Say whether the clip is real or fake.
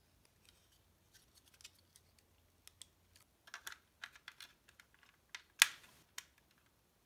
real